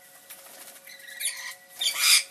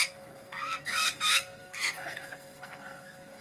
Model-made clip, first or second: second